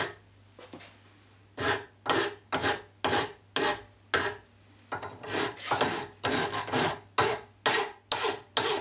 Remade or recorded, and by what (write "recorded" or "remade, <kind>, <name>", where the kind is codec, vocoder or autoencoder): recorded